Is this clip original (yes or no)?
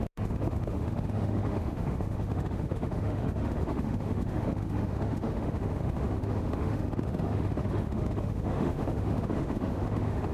no